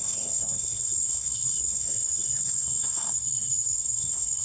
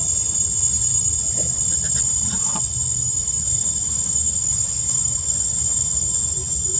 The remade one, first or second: first